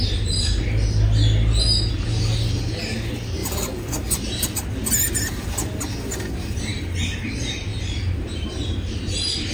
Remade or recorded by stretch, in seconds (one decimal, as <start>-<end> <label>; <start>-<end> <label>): 0.0-3.4 recorded; 3.4-4.1 remade; 4.1-7.7 recorded; 7.7-9.1 remade; 9.1-9.5 recorded